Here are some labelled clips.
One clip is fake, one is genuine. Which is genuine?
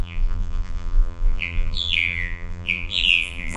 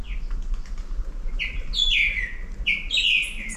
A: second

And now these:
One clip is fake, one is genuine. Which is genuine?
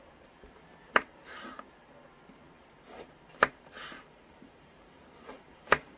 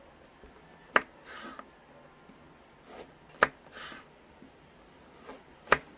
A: second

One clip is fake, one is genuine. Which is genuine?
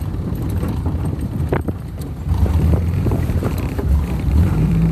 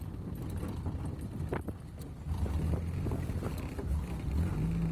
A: second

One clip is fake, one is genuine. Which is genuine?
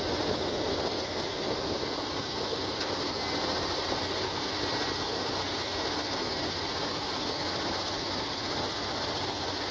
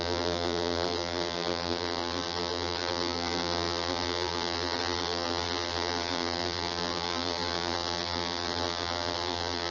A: first